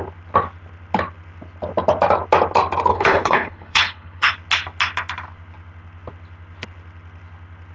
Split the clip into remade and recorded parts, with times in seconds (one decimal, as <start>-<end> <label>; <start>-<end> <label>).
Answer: 0.0-2.9 recorded; 2.9-4.3 remade; 4.3-7.7 recorded